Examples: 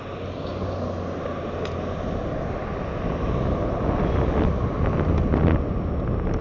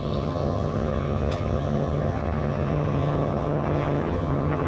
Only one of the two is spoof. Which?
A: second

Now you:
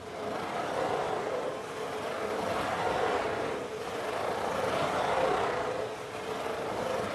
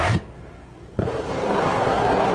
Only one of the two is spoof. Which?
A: second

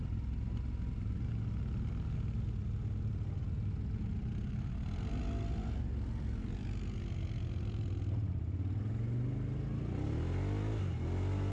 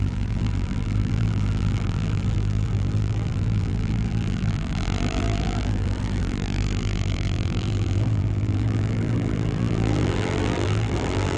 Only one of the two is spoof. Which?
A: second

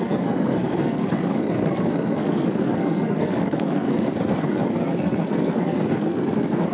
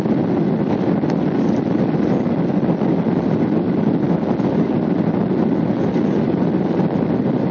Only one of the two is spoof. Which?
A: first